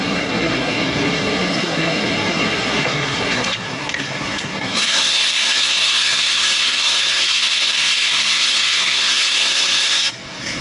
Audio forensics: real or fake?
fake